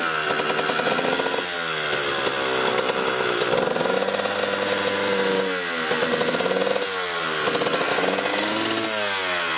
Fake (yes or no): no